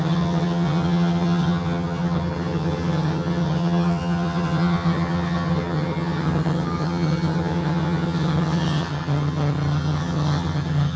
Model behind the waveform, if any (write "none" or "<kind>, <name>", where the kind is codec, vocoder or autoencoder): vocoder, HiFi-GAN